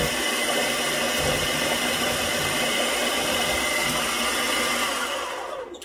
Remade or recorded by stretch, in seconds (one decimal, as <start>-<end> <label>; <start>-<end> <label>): 0.0-0.6 recorded; 0.6-4.1 remade; 4.1-5.8 recorded